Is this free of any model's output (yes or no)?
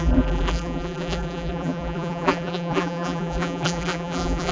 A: no